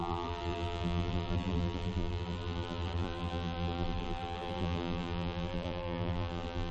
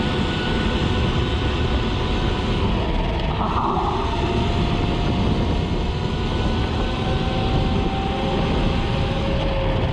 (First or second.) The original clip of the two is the second